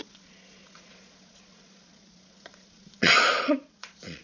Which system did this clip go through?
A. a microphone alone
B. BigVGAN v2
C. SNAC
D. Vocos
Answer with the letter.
D